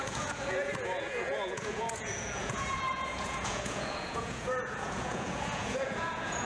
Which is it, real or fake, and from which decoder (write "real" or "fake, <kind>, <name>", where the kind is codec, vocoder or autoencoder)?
fake, vocoder, Vocos